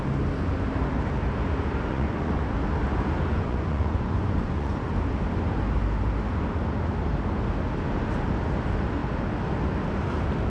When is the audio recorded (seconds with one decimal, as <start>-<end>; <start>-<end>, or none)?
0.0-1.9; 2.4-3.3; 4.9-10.5